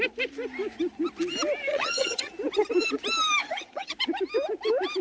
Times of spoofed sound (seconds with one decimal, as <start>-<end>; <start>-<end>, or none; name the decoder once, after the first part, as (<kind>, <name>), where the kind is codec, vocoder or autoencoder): 1.7-2.3 (vocoder, HiFi-GAN); 3.4-3.9

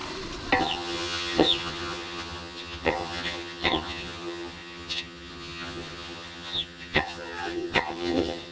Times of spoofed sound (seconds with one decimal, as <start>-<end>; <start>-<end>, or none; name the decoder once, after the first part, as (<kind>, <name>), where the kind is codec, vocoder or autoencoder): 0.6-8.5 (vocoder, HiFi-GAN)

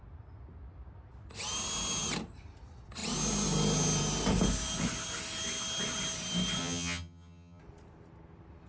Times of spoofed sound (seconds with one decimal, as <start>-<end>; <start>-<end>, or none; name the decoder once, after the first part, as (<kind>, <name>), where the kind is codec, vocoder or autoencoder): 6.6-7.6 (vocoder, HiFi-GAN)

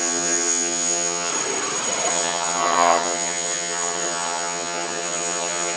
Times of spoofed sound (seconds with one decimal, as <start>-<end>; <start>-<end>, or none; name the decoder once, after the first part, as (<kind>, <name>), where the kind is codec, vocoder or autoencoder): 0.0-1.3 (vocoder, HiFi-GAN); 2.1-5.8

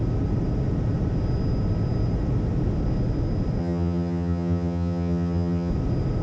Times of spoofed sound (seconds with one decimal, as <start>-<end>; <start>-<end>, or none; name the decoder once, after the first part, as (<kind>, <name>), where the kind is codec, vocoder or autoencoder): 3.6-5.7 (vocoder, HiFi-GAN)